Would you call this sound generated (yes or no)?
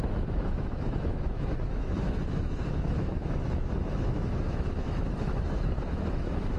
yes